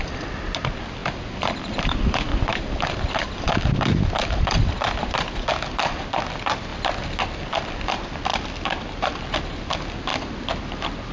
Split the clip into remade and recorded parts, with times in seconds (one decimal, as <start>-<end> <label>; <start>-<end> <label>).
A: 0.0-1.0 recorded; 1.0-5.5 remade; 5.5-8.3 recorded; 8.3-9.2 remade; 9.2-11.1 recorded